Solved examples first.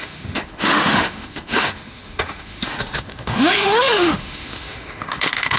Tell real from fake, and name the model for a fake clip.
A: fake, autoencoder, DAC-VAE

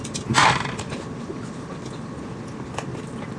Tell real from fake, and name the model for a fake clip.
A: real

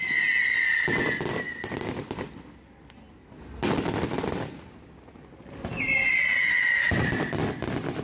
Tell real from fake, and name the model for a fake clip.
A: real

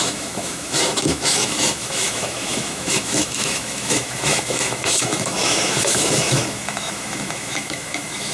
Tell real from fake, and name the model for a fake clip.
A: fake, autoencoder, DAC-VAE